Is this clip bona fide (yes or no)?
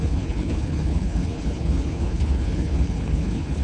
no